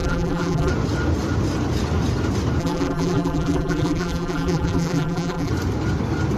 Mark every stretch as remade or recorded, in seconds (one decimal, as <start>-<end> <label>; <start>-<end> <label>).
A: 0.0-0.7 remade; 0.7-2.6 recorded; 2.6-5.5 remade; 5.5-6.4 recorded